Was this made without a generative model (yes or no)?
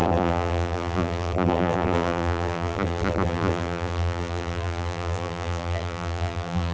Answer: no